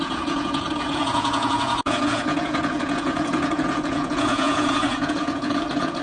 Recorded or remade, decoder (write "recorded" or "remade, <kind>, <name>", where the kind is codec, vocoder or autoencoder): remade, vocoder, Vocos